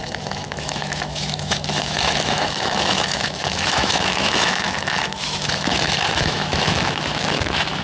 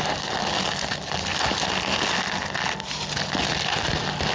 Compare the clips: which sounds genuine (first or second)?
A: second